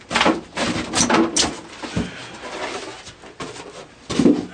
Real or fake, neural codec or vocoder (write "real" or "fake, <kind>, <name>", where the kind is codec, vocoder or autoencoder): real